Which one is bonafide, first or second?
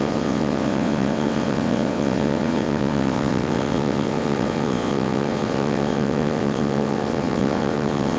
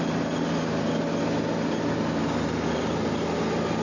second